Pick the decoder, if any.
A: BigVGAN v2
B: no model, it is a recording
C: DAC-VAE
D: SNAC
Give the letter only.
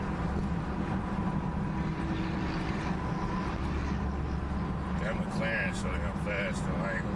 B